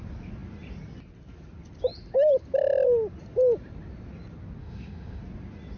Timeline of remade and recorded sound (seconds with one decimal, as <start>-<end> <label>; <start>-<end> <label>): 0.0-4.6 recorded; 4.6-5.2 remade; 5.2-5.8 recorded

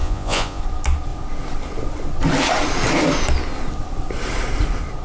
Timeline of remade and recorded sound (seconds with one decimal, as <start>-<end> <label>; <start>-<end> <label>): 0.0-0.6 remade; 0.6-5.0 recorded